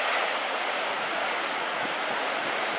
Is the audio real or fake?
fake